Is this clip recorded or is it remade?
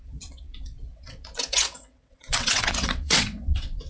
remade